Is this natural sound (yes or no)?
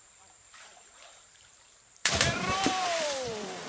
no